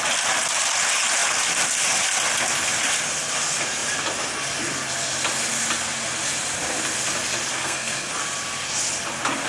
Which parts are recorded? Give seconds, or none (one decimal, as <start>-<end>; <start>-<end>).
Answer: 0.0-7.5; 8.1-9.5